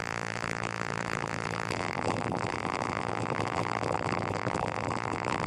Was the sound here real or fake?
fake